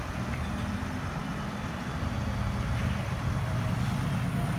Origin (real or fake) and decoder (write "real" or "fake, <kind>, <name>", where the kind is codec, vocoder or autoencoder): fake, vocoder, BigVGAN v2